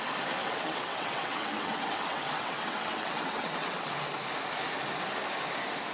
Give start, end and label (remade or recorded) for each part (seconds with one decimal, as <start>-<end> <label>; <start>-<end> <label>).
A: 0.0-0.4 recorded; 0.4-3.9 remade; 3.9-5.9 recorded